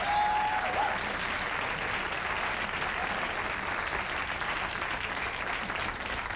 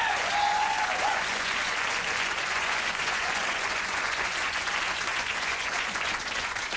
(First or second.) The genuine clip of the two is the first